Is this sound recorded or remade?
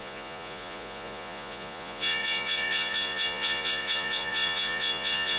remade